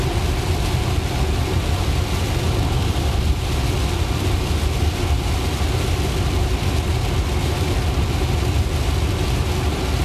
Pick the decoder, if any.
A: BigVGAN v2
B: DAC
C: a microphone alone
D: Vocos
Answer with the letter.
C